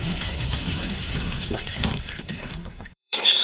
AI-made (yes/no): yes